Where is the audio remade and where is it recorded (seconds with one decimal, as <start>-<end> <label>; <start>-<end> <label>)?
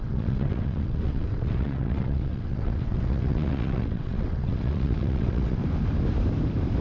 0.0-5.6 remade; 5.6-6.8 recorded